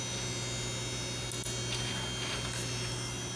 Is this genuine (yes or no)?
yes